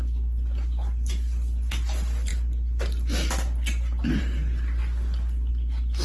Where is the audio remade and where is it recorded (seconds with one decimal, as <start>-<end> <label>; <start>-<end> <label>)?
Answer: 0.0-6.0 recorded